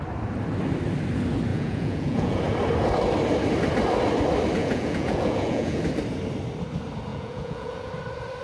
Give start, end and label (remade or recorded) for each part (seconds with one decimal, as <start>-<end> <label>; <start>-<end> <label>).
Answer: 0.0-1.5 recorded; 1.5-2.4 remade; 2.4-4.6 recorded; 4.6-5.8 remade; 5.8-7.1 recorded; 7.1-7.9 remade; 7.9-8.4 recorded